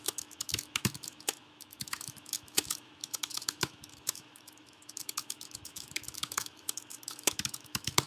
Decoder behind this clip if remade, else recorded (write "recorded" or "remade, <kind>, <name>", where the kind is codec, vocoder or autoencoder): remade, autoencoder, DAC-VAE